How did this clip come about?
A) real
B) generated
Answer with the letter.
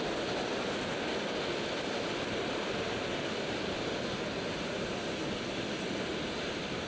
A